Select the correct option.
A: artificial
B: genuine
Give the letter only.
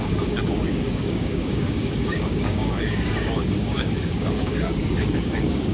A